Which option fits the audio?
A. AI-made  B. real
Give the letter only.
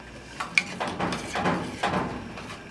B